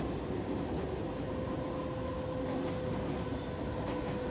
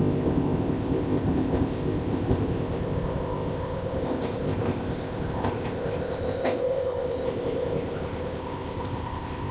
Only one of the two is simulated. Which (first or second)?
second